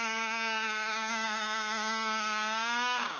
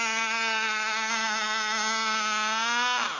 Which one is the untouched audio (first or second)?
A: second